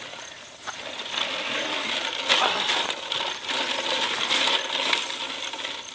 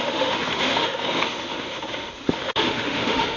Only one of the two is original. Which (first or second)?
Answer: first